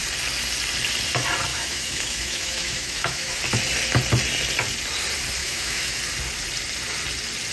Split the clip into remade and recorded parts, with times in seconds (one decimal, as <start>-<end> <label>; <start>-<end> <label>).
0.0-1.5 recorded; 1.5-3.4 remade; 3.4-5.4 recorded; 5.4-6.0 remade; 6.0-7.5 recorded